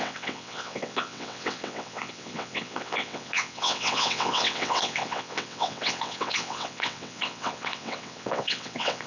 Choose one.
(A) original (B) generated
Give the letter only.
B